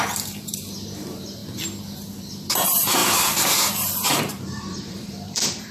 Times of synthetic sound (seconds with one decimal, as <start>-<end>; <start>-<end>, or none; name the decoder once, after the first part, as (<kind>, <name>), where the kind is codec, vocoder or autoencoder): 0.0-1.4 (vocoder, BigVGAN v2); 2.1-5.7